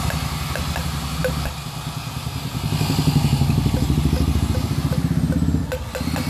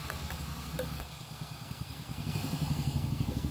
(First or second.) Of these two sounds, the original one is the first